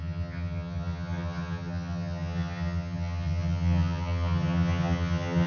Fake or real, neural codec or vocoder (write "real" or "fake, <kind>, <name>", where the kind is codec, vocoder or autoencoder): fake, vocoder, HiFi-GAN